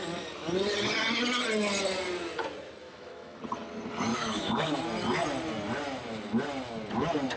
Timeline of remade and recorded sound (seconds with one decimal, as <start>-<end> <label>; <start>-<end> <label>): 0.0-2.8 recorded; 2.8-3.4 remade; 3.4-4.1 recorded; 4.1-4.8 remade; 4.8-7.4 recorded